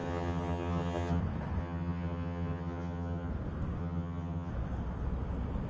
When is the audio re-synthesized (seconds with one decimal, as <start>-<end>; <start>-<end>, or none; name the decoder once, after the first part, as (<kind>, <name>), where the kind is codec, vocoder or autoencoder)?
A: 0.0-1.2 (vocoder, HiFi-GAN); 1.6-3.3; 3.8-4.5